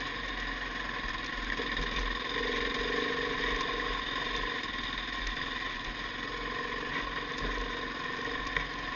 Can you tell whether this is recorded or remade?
recorded